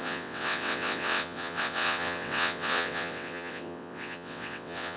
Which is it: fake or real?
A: fake